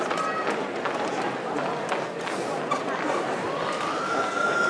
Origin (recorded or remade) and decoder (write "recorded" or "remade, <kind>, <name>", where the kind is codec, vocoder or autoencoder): recorded